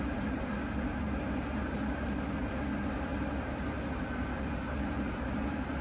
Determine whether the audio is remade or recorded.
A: remade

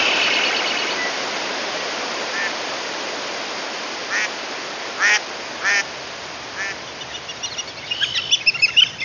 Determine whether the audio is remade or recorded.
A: recorded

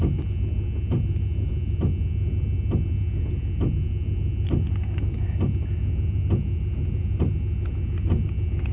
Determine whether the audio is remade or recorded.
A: recorded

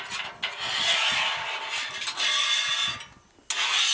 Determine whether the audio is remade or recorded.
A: recorded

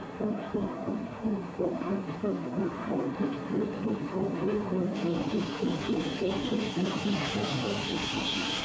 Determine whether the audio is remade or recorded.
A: remade